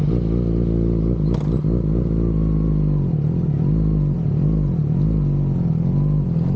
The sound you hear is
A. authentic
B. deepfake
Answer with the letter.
A